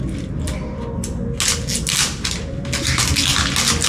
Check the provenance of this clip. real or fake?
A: real